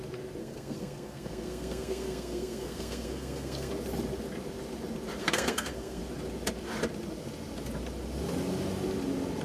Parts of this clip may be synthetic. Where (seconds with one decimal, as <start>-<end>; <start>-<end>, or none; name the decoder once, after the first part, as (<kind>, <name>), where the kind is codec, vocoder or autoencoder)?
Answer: 0.4-3.7 (codec, SNAC); 5.2-6.0